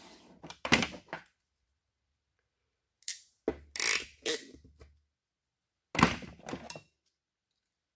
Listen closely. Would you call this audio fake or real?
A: real